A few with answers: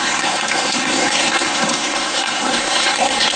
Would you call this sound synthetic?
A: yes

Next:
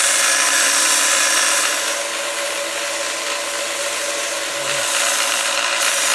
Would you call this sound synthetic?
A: no